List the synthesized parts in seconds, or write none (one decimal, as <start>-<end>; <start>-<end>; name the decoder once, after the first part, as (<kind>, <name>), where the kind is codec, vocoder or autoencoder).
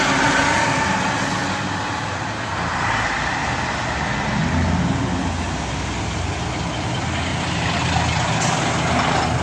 none